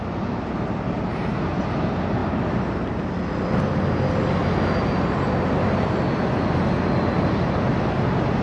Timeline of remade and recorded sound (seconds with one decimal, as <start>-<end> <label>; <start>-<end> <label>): 0.0-8.4 recorded